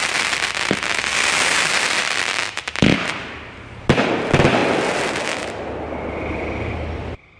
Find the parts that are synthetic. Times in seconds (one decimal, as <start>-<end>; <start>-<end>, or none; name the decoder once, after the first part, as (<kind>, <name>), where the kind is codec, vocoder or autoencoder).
none